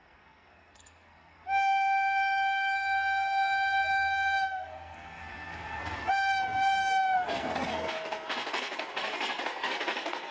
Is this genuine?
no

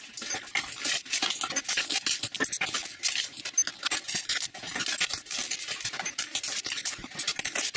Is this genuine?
yes